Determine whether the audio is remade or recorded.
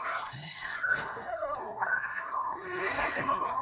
remade